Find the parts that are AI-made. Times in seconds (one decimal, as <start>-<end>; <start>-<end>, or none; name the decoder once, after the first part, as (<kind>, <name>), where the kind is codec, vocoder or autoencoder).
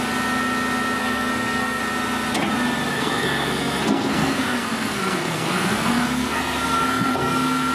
1.0-1.8 (codec, SNAC); 2.9-7.7